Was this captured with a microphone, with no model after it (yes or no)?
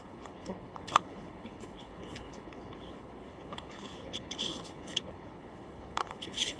no